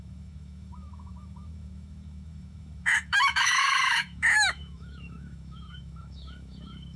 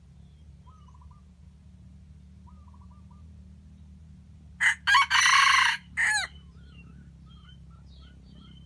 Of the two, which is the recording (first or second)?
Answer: second